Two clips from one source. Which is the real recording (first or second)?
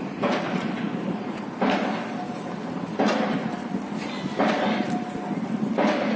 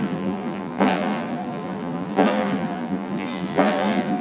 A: first